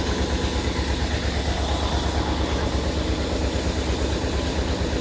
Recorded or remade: recorded